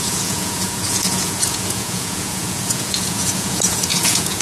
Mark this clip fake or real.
fake